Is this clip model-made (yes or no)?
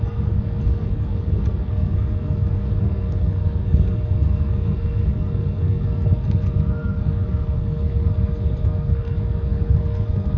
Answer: yes